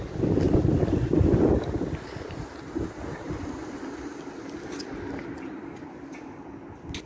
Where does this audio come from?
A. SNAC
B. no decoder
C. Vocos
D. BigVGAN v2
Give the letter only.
B